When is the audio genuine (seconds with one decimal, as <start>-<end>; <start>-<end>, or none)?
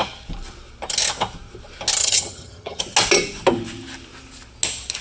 0.0-2.0; 2.8-5.0